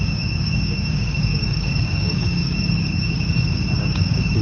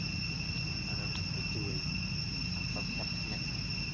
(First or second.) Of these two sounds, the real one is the second